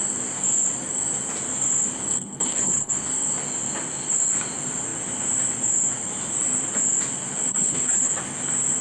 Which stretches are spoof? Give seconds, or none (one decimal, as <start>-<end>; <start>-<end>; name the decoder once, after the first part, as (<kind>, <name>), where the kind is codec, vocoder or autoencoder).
2.1-2.9 (codec, HILCodec); 7.5-8.1